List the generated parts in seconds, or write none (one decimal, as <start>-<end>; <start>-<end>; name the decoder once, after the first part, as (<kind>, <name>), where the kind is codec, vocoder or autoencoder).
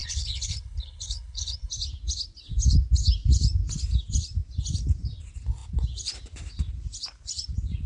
0.0-1.7 (codec, HILCodec)